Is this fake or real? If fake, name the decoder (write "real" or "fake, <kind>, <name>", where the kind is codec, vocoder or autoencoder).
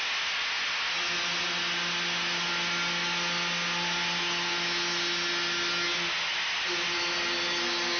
real